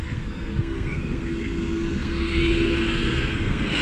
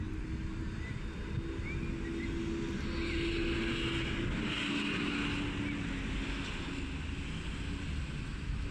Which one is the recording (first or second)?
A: second